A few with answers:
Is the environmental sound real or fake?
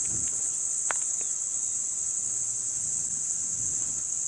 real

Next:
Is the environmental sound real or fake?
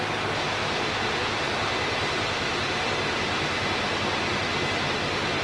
real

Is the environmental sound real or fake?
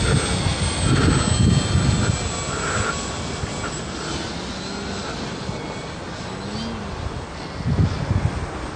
real